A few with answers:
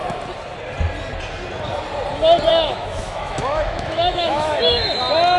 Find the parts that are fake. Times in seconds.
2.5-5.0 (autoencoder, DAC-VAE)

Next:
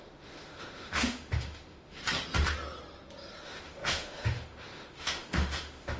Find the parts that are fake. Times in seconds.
0.0-2.0 (autoencoder, DAC-VAE); 3.4-6.0